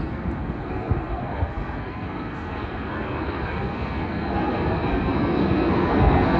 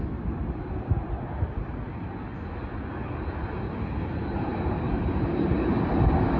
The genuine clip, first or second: second